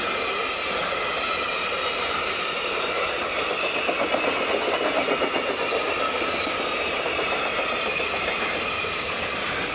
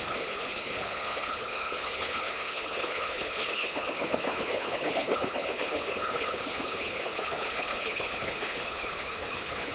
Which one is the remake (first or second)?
second